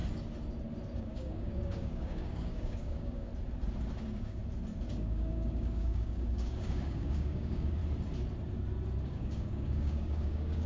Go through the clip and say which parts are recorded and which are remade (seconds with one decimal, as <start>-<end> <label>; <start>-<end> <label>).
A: 0.0-1.0 recorded; 1.0-3.3 remade; 3.3-4.0 recorded; 4.0-4.4 remade; 4.4-4.9 recorded; 4.9-7.8 remade; 7.8-9.1 recorded; 9.1-10.7 remade